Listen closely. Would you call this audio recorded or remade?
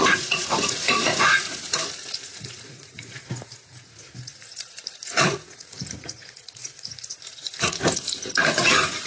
remade